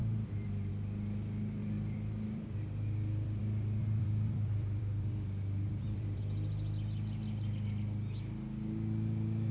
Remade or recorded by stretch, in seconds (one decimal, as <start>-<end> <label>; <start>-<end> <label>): 0.0-0.7 remade; 0.7-1.6 recorded; 1.6-6.2 remade; 6.2-9.5 recorded